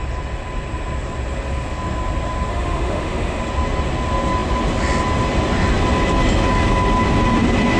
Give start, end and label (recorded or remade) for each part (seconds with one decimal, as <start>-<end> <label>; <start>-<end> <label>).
0.0-2.5 recorded; 2.5-3.4 remade; 3.4-7.8 recorded

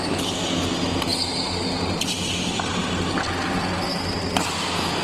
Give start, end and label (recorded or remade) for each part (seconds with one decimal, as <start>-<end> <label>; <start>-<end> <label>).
0.0-5.0 recorded

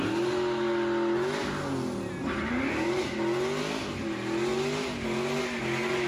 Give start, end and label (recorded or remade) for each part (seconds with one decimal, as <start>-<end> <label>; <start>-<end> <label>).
0.0-6.1 recorded

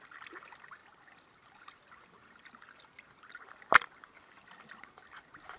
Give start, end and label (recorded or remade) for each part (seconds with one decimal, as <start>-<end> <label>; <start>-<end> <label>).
0.0-5.6 recorded

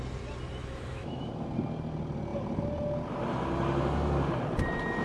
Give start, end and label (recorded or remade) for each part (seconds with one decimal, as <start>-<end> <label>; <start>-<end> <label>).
0.0-0.6 recorded; 0.6-1.3 remade; 1.3-5.0 recorded